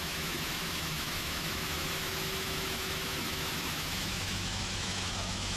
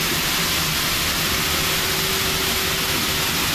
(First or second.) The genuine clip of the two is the second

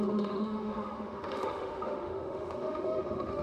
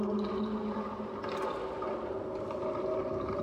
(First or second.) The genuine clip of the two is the second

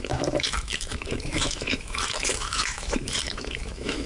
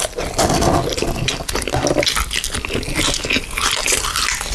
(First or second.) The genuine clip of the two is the second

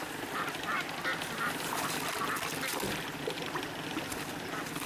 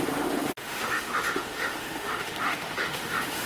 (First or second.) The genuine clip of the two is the first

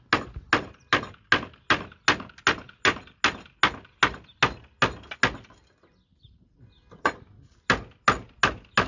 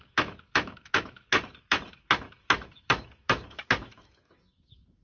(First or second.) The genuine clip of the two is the first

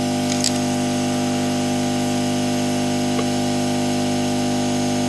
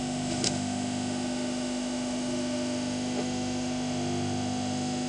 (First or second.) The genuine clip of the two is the first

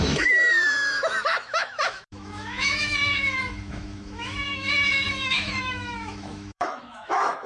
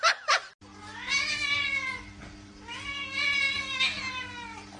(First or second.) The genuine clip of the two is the second